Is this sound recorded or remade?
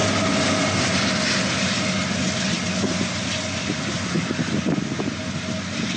recorded